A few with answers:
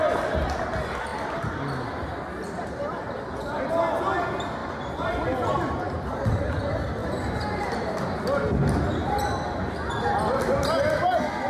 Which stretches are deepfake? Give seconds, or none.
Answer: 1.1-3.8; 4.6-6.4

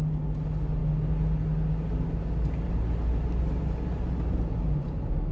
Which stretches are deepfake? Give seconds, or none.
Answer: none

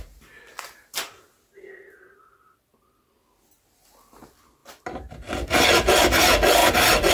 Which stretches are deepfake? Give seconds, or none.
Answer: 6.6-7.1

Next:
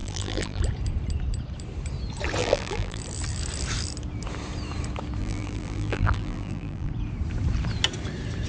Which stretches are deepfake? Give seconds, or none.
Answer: 0.0-0.6; 2.4-3.0; 5.2-6.9